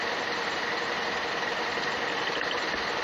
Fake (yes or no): no